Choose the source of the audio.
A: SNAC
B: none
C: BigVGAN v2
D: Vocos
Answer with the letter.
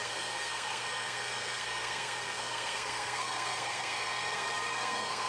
A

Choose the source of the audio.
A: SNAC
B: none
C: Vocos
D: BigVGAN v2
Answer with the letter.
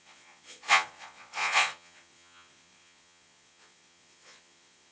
C